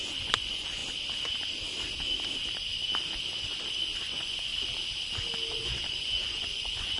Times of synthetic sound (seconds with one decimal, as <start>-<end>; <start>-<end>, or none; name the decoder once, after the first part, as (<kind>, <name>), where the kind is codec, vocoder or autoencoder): 0.0-0.8 (vocoder, Vocos); 4.0-4.5; 5.5-7.0